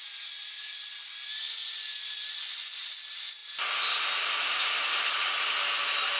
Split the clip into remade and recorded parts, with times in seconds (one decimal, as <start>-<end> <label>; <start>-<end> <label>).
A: 0.0-6.2 recorded